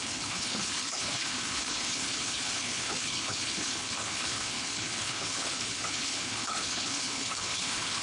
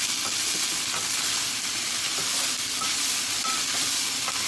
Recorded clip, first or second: second